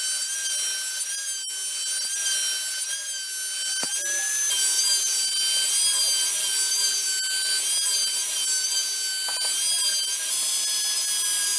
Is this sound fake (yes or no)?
no